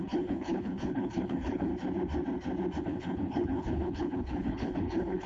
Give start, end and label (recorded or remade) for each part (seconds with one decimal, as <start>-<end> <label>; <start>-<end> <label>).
0.0-1.7 remade; 1.7-2.8 recorded; 2.8-5.3 remade